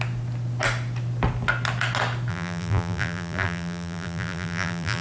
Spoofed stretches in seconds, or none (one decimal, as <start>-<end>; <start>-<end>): 2.3-5.0

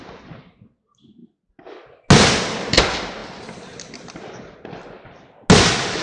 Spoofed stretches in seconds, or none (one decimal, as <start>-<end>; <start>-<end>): none

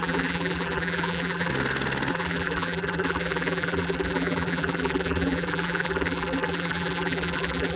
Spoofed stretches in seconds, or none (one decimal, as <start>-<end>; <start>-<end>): 0.0-1.5; 2.1-7.8

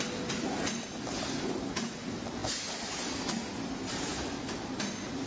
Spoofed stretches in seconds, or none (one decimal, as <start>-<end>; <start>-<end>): none